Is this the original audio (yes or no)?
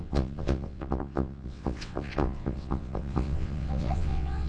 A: no